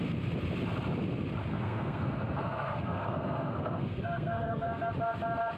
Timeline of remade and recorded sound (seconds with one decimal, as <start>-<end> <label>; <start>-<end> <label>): 0.0-1.5 recorded; 1.5-4.9 remade; 4.9-5.6 recorded